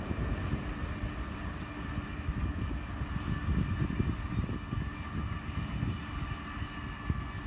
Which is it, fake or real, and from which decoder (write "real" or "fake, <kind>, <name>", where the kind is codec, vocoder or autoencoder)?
real